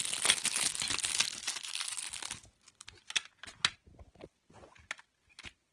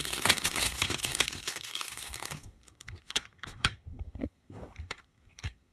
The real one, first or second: first